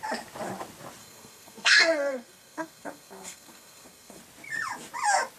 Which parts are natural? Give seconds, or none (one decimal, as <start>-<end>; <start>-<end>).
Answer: 0.0-1.0; 4.2-5.4